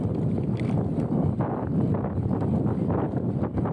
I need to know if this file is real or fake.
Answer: real